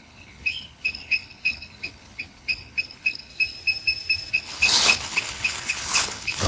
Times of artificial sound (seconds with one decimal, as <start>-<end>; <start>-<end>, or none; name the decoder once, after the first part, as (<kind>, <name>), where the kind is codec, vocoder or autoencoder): 0.0-3.3 (codec, HILCodec); 4.3-6.5